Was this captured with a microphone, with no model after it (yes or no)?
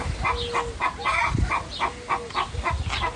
yes